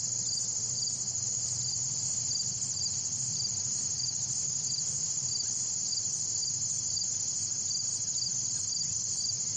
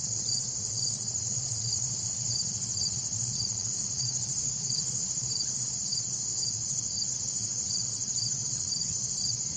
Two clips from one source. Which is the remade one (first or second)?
second